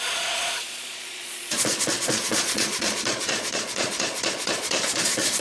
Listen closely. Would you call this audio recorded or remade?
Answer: remade